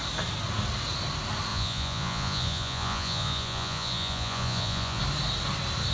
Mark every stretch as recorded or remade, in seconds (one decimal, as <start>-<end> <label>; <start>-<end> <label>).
0.0-1.5 recorded; 1.5-5.0 remade; 5.0-5.9 recorded